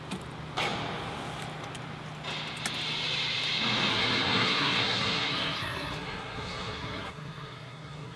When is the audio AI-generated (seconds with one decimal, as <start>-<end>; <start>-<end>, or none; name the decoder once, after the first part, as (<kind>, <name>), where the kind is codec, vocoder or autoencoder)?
3.9-8.2 (codec, SNAC)